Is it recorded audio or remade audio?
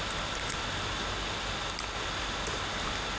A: recorded